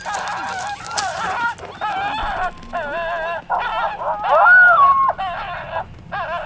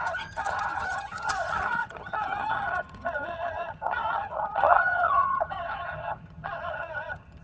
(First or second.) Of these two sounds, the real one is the first